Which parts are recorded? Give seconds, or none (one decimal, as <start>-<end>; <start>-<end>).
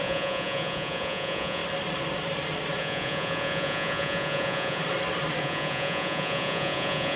1.6-2.8; 4.8-5.4